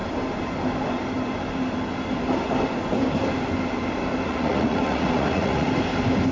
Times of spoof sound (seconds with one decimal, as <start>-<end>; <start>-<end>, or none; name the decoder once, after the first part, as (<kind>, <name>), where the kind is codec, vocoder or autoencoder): 4.3-5.7 (vocoder, Vocos)